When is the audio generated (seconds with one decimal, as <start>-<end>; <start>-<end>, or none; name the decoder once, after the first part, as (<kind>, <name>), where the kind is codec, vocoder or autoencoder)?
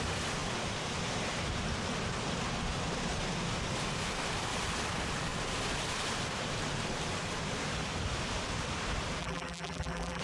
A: 9.2-10.2 (vocoder, BigVGAN v2)